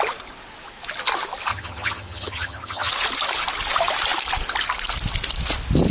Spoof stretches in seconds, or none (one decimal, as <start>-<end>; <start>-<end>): 1.5-2.9